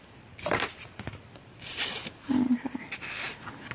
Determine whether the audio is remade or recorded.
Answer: recorded